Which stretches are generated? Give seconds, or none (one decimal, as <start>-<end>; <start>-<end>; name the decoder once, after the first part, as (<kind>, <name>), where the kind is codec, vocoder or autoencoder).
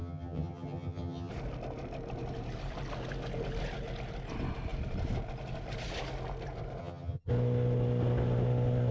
0.0-1.3 (vocoder, HiFi-GAN); 6.8-7.3